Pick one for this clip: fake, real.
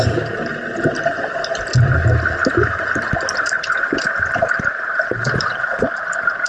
real